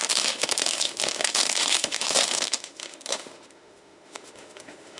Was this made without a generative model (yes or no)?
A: no